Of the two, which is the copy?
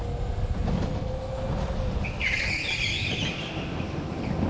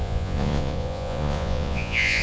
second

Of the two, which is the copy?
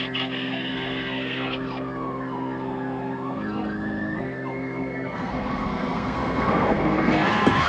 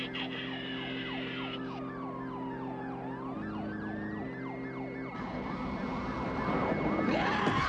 first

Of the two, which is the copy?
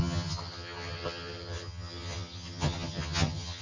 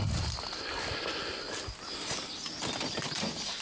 first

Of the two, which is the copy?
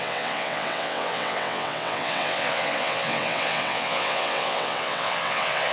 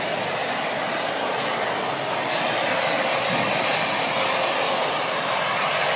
first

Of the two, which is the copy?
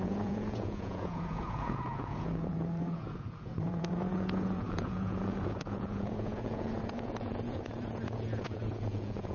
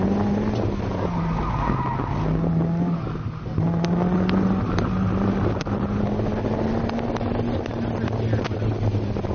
first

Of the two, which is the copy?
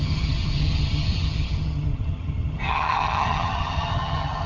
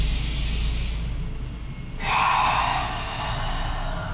first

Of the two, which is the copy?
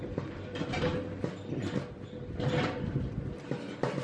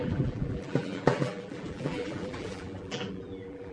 second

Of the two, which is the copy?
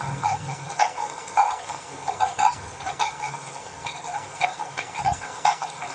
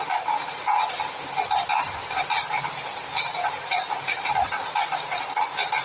first